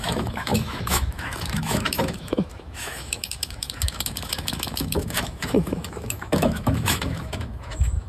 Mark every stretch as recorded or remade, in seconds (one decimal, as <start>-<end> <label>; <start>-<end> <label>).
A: 0.0-8.1 remade